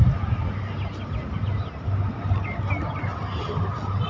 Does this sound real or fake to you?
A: real